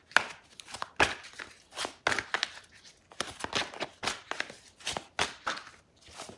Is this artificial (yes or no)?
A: no